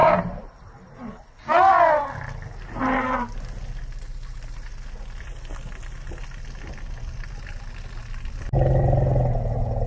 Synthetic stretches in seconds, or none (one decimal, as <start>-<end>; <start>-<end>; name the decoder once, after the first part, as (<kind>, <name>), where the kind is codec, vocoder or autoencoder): none